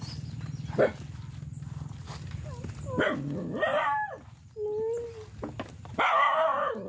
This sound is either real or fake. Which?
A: real